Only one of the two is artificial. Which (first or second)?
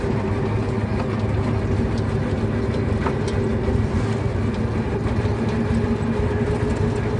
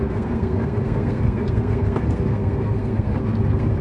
second